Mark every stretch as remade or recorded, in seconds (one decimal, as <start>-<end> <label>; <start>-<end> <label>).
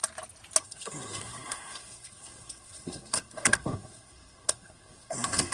0.0-0.6 recorded; 0.6-5.5 remade